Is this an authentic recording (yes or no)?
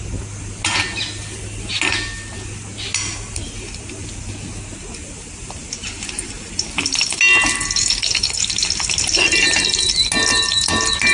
yes